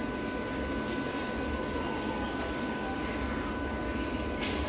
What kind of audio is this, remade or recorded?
recorded